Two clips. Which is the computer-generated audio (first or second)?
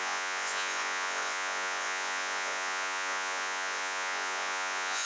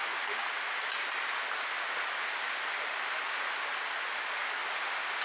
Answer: first